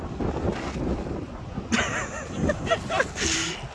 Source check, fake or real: real